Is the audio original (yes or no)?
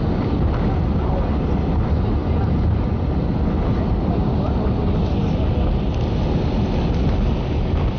yes